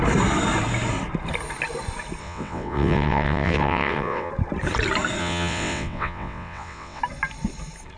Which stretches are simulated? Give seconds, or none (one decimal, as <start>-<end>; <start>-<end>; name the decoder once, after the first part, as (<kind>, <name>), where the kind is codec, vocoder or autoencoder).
2.2-4.3 (vocoder, WaveNeXt); 5.2-7.0